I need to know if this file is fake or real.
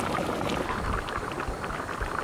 real